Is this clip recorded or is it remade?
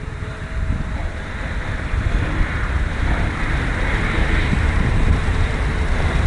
remade